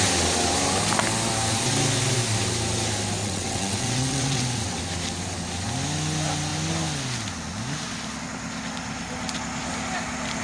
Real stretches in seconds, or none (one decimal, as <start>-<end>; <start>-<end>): 0.0-3.2; 4.8-10.4